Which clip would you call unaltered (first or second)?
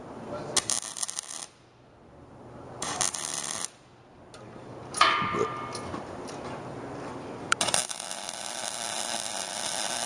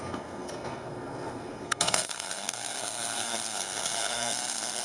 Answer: first